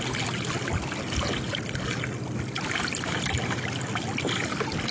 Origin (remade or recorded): recorded